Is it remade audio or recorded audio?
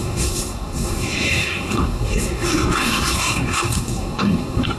remade